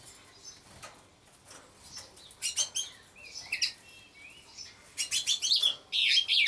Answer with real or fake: real